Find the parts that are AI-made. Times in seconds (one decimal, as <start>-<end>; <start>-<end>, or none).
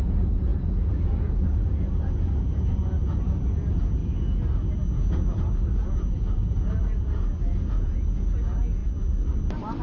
0.0-4.0; 4.9-8.8